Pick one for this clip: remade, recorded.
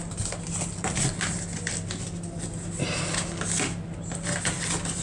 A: remade